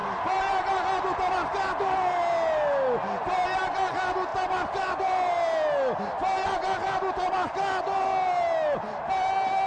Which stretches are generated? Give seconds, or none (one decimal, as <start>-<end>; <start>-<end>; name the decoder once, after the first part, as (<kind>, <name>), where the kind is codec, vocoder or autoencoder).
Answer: none

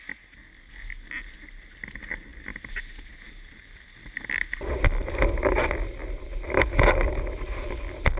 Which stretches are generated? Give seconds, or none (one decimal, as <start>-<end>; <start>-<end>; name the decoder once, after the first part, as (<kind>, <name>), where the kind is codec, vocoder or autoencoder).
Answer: none

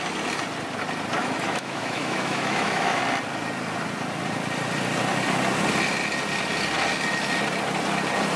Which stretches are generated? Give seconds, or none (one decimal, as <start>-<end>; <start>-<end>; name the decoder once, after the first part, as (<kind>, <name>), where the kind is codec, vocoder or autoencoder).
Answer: 1.2-3.0 (autoencoder, DAC-VAE)

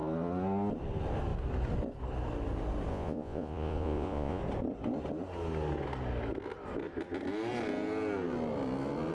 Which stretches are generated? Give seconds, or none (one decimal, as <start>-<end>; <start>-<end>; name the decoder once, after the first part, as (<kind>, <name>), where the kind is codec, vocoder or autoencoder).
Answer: 2.9-4.4 (vocoder, Vocos)

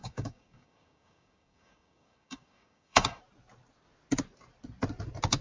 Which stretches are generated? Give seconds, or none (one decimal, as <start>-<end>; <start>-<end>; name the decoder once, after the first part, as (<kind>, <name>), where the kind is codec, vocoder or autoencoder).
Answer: 0.0-3.2 (codec, DAC)

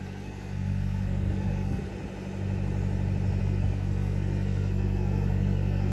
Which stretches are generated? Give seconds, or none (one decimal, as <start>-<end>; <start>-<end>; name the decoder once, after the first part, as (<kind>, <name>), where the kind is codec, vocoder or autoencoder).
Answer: 0.0-1.9 (codec, SNAC); 3.4-5.9

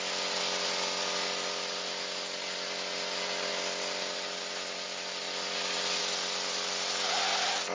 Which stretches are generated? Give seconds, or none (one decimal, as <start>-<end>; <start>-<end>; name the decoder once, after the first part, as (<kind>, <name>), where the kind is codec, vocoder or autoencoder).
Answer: none

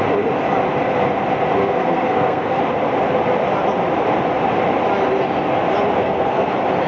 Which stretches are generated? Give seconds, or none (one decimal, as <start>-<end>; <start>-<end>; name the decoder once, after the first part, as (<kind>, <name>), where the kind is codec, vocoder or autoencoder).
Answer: 1.6-2.6 (codec, SNAC); 6.0-6.5